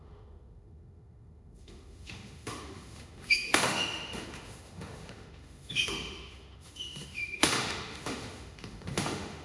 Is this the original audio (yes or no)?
no